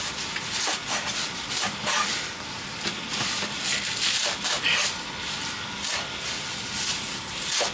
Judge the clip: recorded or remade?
recorded